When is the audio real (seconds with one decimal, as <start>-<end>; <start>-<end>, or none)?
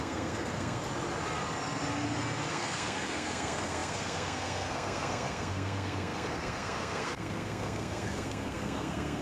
0.8-2.5